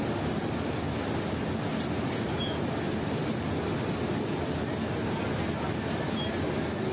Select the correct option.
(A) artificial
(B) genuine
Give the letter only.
B